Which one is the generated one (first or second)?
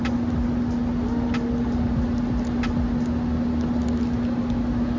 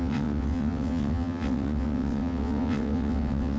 second